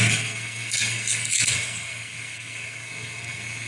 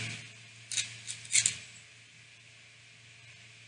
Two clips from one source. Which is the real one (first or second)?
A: second